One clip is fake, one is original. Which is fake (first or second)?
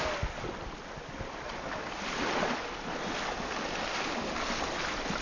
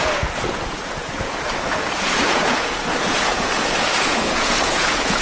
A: second